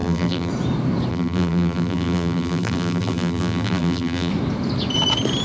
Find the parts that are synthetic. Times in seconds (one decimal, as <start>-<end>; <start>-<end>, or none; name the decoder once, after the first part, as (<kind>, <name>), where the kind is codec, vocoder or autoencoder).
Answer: 0.0-0.5 (vocoder, BigVGAN v2); 1.1-4.3

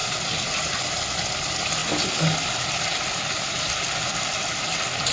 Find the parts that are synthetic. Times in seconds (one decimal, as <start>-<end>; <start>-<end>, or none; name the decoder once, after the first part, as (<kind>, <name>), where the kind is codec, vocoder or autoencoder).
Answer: none

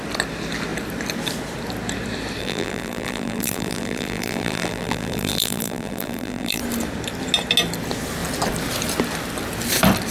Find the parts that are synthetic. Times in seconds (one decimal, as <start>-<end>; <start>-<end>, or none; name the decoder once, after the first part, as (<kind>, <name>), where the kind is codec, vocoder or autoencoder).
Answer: 2.4-6.6 (vocoder, BigVGAN v2)